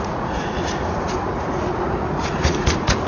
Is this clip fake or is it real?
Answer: fake